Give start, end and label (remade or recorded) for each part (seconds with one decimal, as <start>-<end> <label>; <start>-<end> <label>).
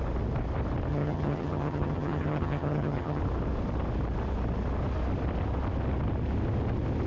0.0-0.9 recorded; 0.9-3.2 remade; 3.2-7.1 recorded